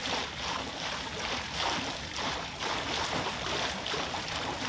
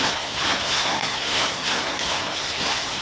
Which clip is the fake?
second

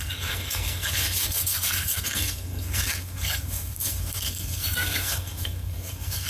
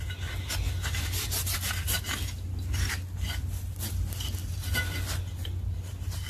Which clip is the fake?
first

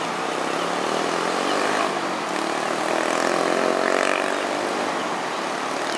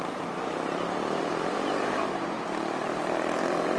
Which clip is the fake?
second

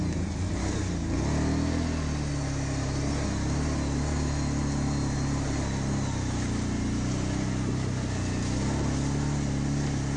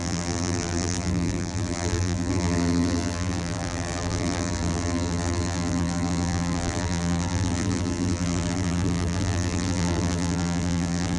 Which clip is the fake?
second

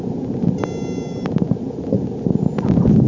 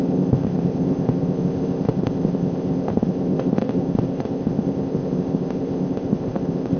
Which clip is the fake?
second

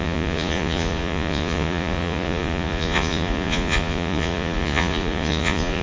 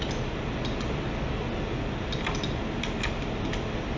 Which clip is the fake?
first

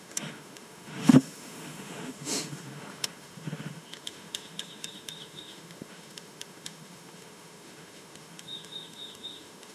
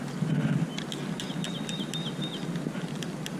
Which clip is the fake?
first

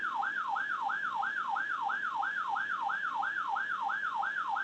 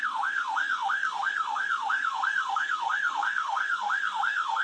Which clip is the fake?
second